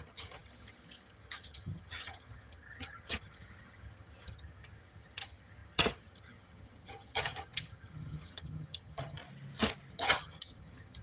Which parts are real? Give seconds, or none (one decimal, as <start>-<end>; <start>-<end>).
9.2-9.9